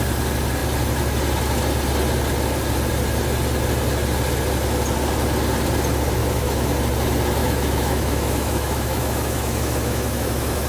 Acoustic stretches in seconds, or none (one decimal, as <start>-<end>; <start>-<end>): 0.0-6.2; 6.8-7.4